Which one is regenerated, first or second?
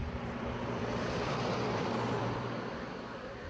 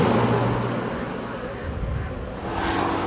first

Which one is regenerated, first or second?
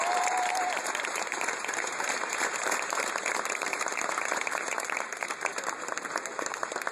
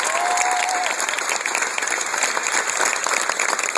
first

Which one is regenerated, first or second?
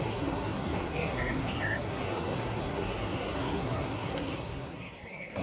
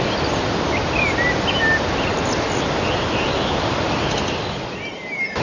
first